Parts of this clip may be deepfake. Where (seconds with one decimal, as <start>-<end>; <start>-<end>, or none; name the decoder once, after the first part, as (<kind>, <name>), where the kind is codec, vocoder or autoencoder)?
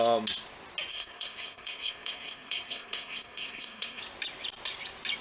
0.9-4.0 (codec, SNAC)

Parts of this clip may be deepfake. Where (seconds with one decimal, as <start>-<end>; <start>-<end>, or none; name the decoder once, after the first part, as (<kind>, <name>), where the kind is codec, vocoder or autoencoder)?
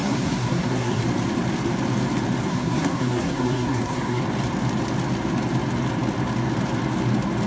0.0-1.0 (codec, SNAC); 2.5-4.2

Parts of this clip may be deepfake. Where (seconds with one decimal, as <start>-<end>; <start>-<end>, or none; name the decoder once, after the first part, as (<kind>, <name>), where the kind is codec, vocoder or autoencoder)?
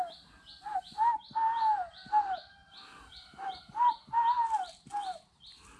none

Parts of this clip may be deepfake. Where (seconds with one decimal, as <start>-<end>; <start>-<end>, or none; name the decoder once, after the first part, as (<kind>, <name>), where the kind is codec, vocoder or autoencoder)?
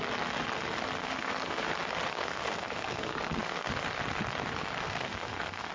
1.0-1.7 (codec, SNAC); 2.1-3.7; 4.8-5.7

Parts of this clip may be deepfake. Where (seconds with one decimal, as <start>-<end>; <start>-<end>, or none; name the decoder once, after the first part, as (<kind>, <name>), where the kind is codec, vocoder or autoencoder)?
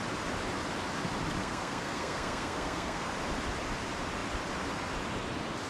1.4-3.1 (codec, SNAC)